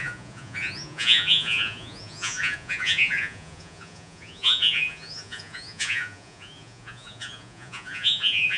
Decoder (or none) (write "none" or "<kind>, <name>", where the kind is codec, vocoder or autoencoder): vocoder, Vocos